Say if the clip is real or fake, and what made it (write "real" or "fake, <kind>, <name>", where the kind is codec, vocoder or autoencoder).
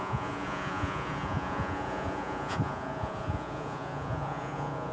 fake, vocoder, Vocos